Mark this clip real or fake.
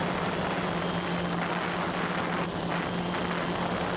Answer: real